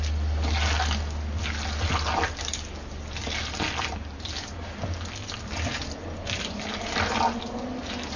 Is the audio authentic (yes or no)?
yes